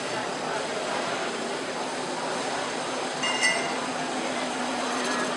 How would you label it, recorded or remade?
recorded